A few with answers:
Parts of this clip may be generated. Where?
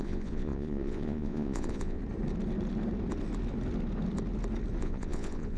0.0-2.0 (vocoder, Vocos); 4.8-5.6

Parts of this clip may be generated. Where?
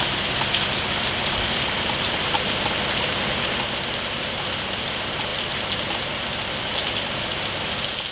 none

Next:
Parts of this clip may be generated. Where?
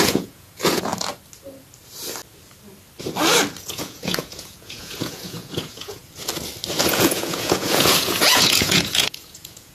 0.0-0.9 (vocoder, Vocos); 3.6-6.0; 6.9-9.7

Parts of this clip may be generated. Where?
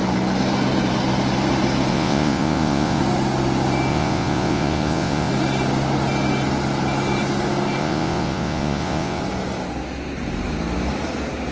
1.9-3.0 (vocoder, Vocos); 3.9-5.3; 7.8-9.2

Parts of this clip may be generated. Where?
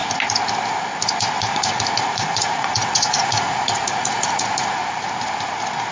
1.5-4.3 (vocoder, Vocos)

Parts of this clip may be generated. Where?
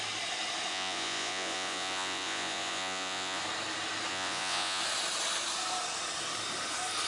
0.7-3.4 (vocoder, Vocos); 4.1-4.8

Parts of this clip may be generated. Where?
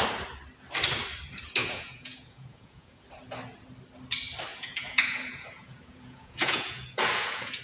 1.6-3.0 (vocoder, Vocos); 4.5-7.6